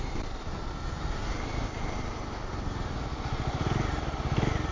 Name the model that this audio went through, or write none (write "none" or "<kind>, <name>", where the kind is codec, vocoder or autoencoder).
none